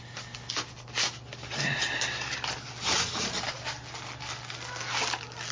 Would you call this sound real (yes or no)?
yes